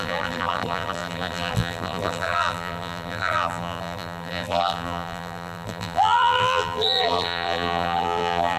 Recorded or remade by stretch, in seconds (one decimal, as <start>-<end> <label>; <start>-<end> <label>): 0.0-8.6 remade